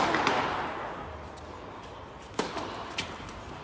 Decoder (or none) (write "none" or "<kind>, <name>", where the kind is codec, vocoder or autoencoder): none